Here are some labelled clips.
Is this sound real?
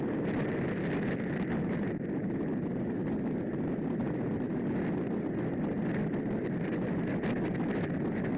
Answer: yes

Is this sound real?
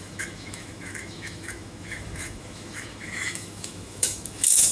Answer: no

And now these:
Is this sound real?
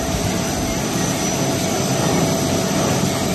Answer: yes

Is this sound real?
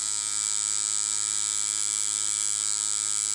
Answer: yes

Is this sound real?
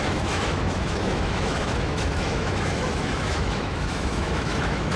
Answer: no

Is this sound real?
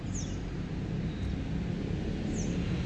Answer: yes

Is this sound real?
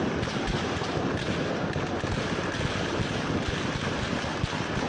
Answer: yes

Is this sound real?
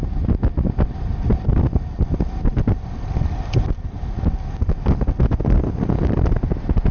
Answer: yes